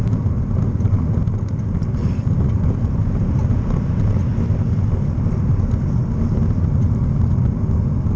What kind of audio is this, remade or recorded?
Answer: recorded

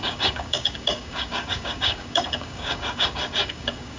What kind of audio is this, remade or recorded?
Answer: remade